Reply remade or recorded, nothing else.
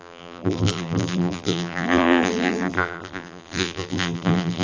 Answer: remade